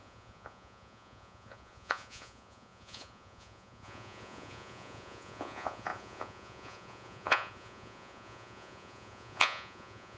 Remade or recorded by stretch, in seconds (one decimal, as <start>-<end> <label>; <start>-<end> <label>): 0.0-10.2 remade